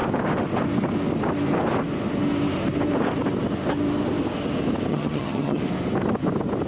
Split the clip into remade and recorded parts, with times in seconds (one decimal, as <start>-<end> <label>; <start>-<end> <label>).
0.0-4.9 recorded; 4.9-5.6 remade; 5.6-6.7 recorded